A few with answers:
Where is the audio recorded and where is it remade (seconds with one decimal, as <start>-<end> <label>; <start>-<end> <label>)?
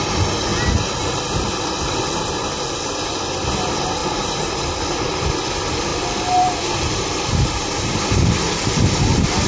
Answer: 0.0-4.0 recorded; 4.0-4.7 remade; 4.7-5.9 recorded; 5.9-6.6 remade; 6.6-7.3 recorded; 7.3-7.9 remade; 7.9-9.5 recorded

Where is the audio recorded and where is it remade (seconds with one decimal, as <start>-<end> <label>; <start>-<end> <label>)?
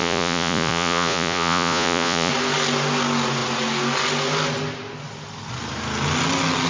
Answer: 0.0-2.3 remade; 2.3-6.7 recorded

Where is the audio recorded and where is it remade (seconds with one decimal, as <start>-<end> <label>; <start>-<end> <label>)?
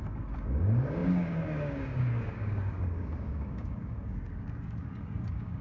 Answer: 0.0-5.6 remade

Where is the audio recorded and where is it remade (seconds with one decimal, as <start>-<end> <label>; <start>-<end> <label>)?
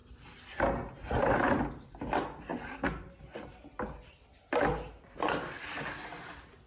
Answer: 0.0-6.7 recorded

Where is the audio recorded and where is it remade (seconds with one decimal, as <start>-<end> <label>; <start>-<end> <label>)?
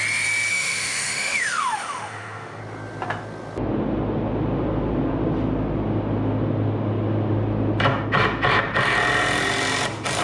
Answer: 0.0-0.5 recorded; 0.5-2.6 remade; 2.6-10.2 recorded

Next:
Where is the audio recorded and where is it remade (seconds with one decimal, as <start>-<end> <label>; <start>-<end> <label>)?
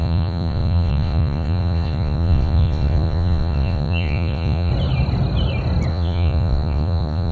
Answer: 0.0-4.7 remade; 4.7-5.9 recorded; 5.9-7.3 remade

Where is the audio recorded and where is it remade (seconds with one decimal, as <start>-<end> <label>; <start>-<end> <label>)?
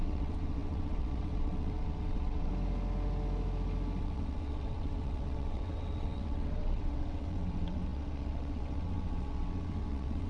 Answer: 0.0-2.5 remade; 2.5-4.0 recorded; 4.0-10.3 remade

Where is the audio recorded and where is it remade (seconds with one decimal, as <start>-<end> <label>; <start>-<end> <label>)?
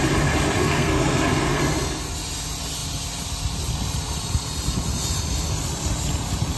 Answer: 0.0-0.6 recorded; 0.6-1.6 remade; 1.6-6.6 recorded